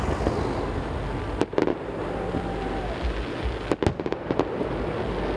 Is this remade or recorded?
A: recorded